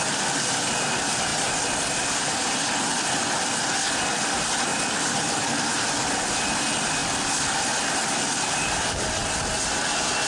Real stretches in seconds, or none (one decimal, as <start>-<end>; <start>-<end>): 7.0-8.0; 9.2-10.3